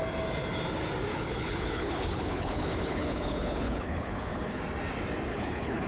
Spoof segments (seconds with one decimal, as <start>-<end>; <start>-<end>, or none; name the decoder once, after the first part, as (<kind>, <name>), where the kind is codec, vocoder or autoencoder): 1.1-4.6 (codec, HILCodec); 5.3-5.9